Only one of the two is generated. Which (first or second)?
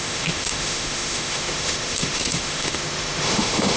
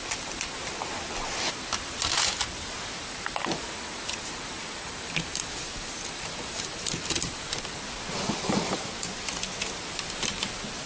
first